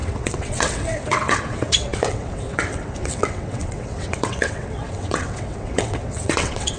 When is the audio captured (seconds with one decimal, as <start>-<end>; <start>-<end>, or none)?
none